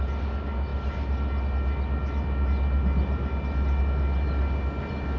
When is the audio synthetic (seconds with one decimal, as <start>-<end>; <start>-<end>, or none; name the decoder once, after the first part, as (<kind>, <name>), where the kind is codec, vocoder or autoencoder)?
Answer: none